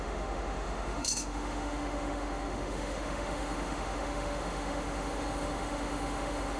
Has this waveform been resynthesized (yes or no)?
yes